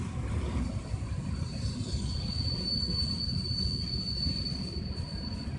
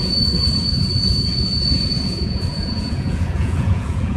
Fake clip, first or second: second